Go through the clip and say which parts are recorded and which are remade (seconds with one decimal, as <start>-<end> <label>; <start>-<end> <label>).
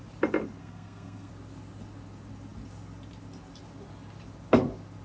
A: 0.0-0.6 recorded; 0.6-1.3 remade; 1.3-5.0 recorded